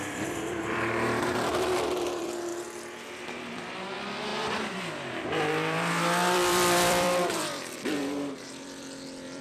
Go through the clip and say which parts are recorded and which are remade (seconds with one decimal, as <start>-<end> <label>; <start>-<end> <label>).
0.0-2.5 remade; 2.5-3.2 recorded; 3.2-9.4 remade